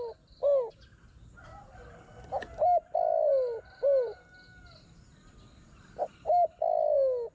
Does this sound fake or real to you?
real